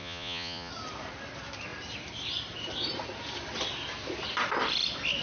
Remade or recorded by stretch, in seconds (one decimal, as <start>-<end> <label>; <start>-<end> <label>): 0.0-0.7 remade; 0.7-5.2 recorded